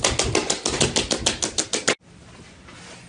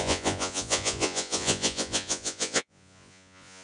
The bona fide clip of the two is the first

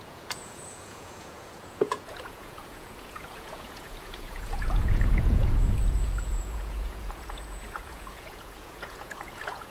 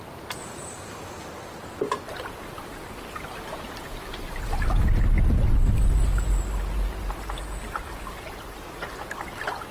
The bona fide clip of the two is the second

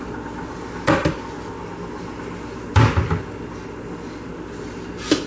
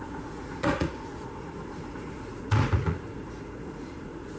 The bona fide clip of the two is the first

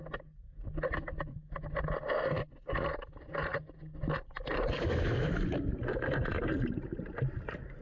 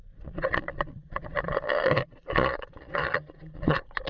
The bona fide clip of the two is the first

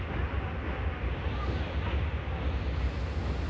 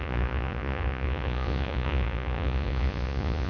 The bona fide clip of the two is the first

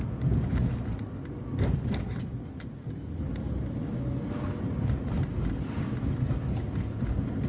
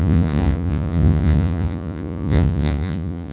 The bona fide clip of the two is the first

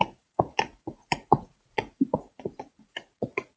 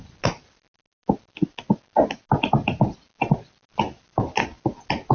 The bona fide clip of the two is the second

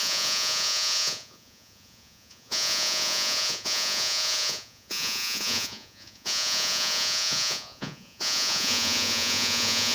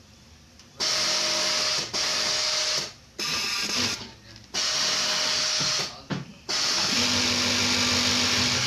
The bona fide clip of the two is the second